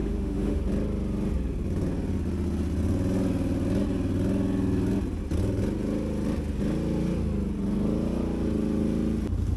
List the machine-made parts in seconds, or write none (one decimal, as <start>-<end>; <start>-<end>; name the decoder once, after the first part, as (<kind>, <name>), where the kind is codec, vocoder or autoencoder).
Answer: 0.0-0.6 (autoencoder, DAC-VAE)